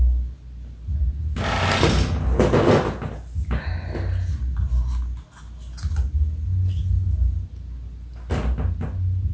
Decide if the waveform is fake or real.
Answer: real